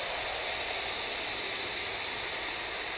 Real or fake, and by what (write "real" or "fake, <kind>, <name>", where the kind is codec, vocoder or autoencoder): real